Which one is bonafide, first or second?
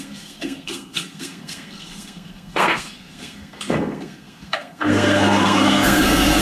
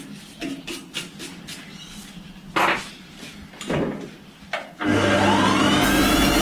second